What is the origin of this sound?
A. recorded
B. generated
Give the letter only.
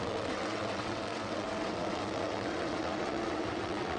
B